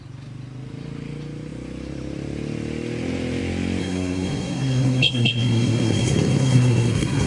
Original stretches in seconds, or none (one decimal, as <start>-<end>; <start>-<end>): 0.0-3.8